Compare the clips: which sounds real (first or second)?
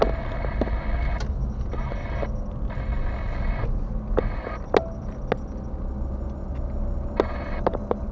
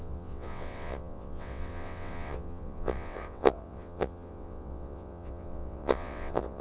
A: first